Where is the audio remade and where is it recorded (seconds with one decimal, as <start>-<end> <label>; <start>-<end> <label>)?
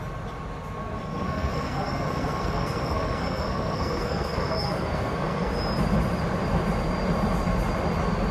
0.0-0.8 recorded; 0.8-5.5 remade; 5.5-8.3 recorded